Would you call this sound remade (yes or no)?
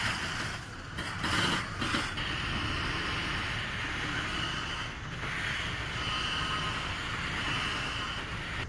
no